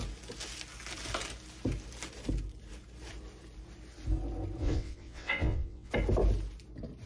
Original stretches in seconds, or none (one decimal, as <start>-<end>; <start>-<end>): 0.0-4.6; 5.9-7.1